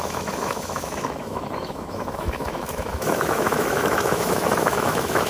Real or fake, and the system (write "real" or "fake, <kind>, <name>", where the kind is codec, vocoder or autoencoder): fake, autoencoder, DAC-VAE